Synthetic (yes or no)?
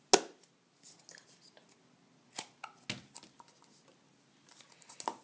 no